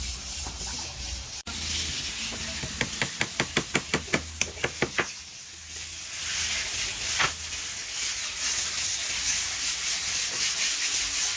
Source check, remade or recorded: recorded